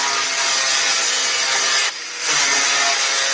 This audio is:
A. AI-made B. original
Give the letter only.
B